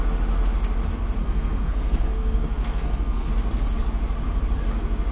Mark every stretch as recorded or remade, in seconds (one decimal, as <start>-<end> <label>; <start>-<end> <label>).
0.0-1.2 recorded; 1.2-3.3 remade; 3.3-5.1 recorded